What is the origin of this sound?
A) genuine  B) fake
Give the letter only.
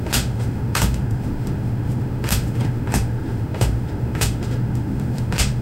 B